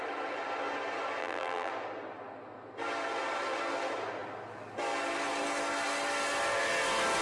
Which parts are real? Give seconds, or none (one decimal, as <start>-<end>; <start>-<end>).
0.0-1.2; 1.7-7.2